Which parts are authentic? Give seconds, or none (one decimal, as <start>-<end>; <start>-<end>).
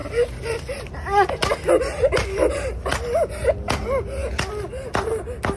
0.0-5.6